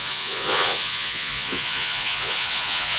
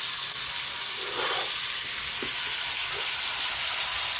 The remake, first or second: first